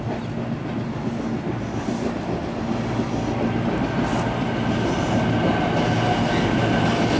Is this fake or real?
real